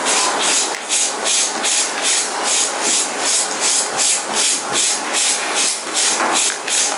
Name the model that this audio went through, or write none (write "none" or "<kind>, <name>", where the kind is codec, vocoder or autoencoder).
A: none